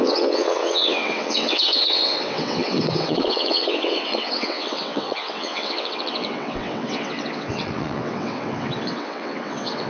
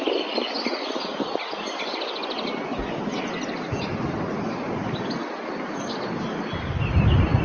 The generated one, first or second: first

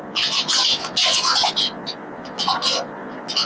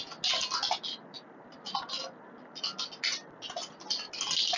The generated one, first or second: first